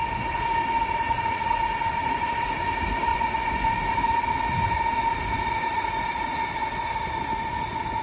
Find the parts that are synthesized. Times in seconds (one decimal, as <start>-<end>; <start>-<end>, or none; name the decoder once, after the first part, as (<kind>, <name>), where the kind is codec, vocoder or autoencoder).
3.1-3.7 (vocoder, Vocos)